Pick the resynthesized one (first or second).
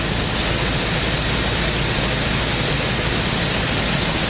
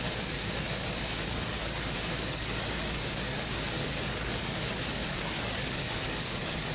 second